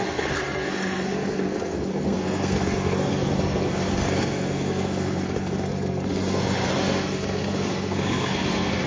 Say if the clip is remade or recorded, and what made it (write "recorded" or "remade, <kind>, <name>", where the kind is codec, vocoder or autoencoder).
remade, codec, SNAC